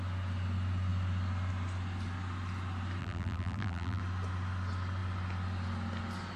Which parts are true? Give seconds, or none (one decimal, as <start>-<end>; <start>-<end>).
0.0-3.0; 4.0-6.4